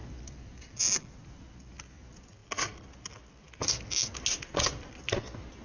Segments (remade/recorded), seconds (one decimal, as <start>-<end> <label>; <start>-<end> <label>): 0.0-5.6 recorded